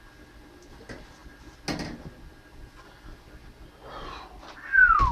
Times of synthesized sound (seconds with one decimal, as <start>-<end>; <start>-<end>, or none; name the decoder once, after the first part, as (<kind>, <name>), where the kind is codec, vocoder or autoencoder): none